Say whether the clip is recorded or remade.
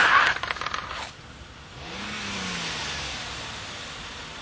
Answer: recorded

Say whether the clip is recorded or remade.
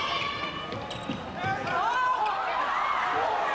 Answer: recorded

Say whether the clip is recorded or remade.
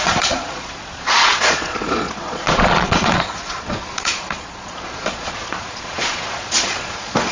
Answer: remade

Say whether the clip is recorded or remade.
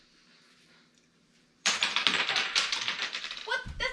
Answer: remade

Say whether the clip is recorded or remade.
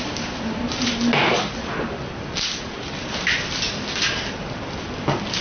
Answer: recorded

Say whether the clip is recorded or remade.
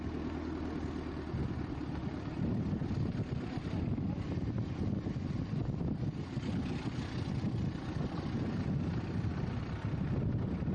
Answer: recorded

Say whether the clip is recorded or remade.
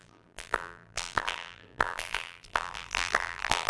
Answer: remade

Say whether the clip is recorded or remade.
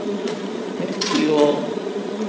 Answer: remade